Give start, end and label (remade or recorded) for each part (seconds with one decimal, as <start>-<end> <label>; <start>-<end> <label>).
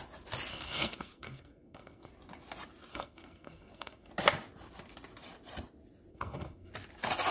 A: 0.0-0.5 recorded; 0.5-2.1 remade; 2.1-2.9 recorded; 2.9-4.1 remade; 4.1-6.1 recorded; 6.1-6.7 remade; 6.7-7.3 recorded